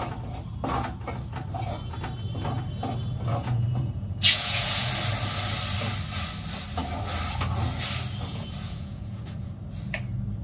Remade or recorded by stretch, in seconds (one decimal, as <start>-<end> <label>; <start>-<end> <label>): 0.0-3.3 recorded; 3.3-4.9 remade; 4.9-8.3 recorded; 8.3-9.5 remade; 9.5-10.4 recorded